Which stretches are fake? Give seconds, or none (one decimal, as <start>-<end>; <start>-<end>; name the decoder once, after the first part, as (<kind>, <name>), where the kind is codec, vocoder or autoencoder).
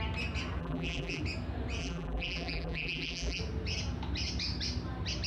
0.6-1.2 (vocoder, BigVGAN v2); 1.8-3.4